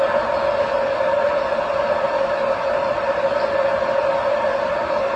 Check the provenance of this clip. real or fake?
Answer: real